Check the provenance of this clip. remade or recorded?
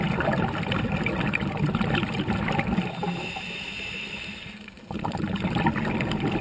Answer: recorded